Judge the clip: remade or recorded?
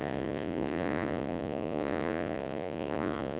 remade